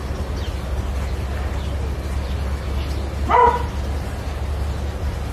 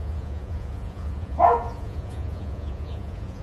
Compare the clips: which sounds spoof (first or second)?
second